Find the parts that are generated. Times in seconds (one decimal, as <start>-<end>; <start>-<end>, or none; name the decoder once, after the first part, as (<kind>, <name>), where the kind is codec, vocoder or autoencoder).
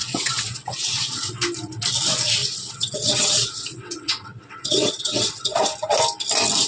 0.0-1.3 (vocoder, WaveNeXt); 2.4-5.7